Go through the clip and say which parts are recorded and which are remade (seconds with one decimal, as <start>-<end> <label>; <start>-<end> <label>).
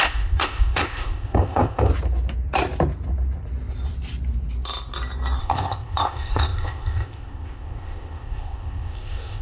0.0-1.9 remade; 1.9-5.4 recorded; 5.4-9.4 remade